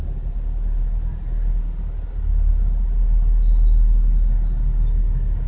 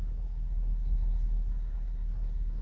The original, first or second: first